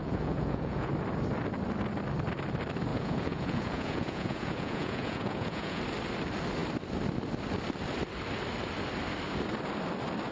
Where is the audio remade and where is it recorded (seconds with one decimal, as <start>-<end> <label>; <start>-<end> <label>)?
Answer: 0.0-0.9 remade; 0.9-2.9 recorded; 2.9-5.8 remade; 5.8-10.3 recorded